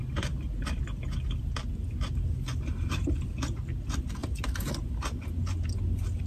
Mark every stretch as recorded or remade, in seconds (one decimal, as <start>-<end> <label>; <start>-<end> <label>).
0.0-6.3 recorded